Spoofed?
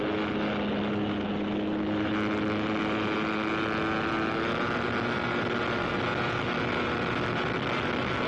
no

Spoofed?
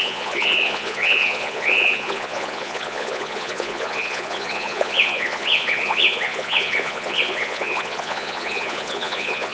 yes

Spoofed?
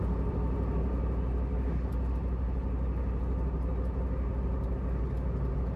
no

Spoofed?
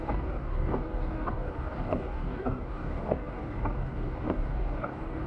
yes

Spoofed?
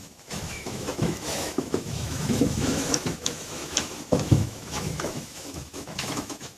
yes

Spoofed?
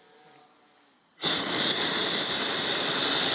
no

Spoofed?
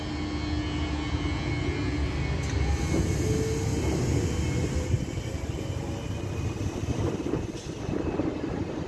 no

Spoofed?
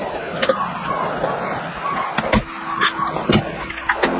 no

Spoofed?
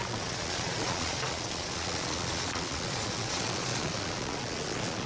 yes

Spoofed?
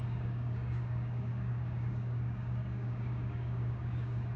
yes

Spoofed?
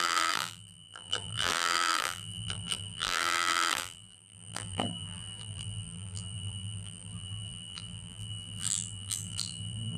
yes